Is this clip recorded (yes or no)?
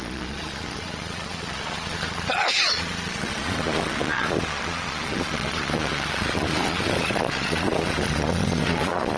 no